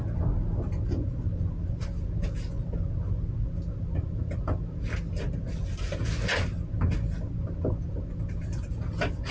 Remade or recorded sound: recorded